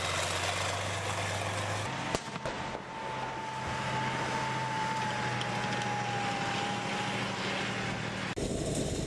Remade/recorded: recorded